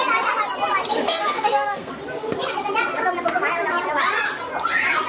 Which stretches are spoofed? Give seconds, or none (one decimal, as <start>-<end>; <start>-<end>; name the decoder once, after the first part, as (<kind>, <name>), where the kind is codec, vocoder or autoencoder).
0.9-1.9 (codec, SNAC)